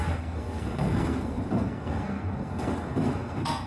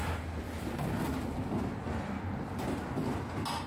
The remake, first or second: first